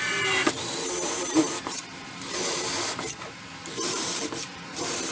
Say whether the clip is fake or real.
fake